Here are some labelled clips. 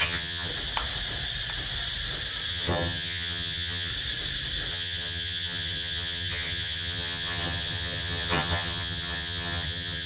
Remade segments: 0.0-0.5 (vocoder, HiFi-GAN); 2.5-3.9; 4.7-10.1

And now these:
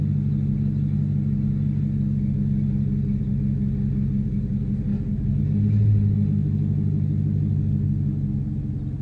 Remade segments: none

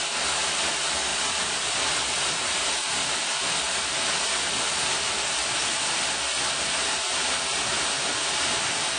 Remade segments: none

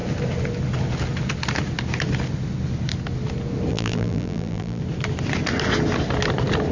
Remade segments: 3.7-4.8 (vocoder, BigVGAN v2)